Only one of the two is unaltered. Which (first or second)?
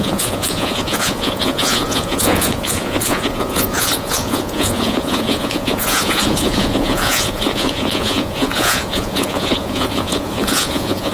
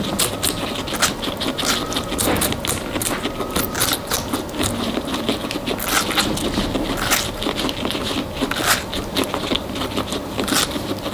second